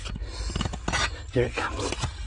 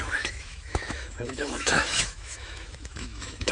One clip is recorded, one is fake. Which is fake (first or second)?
second